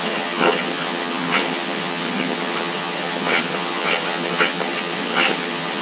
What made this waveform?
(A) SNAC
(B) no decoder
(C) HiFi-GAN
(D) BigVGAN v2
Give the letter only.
C